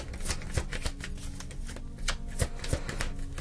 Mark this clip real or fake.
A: real